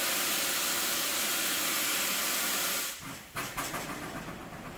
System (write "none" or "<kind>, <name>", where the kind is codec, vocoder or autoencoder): none